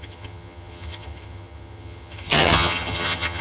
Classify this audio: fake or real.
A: fake